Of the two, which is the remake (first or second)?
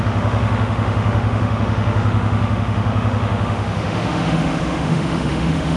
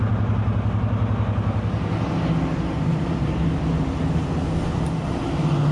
first